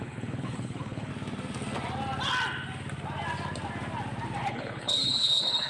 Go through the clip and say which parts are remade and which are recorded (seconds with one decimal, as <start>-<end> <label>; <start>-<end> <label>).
0.0-1.1 remade; 1.1-4.5 recorded; 4.5-5.7 remade